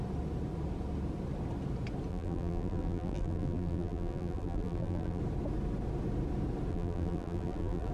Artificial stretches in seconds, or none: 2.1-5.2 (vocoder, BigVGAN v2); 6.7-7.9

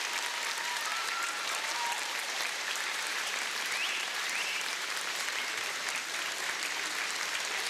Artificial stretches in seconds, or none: 0.9-5.5 (vocoder, BigVGAN v2)

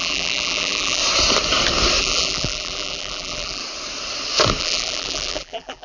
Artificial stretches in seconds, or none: 0.0-1.0 (vocoder, BigVGAN v2); 2.0-3.6; 4.6-5.8

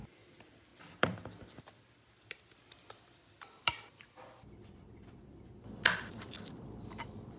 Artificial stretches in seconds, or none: 0.0-7.4 (vocoder, BigVGAN v2)

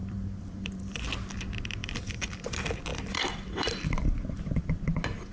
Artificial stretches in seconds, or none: 0.0-1.0 (vocoder, BigVGAN v2); 1.8-2.4; 2.9-4.6

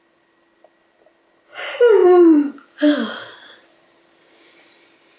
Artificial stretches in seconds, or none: none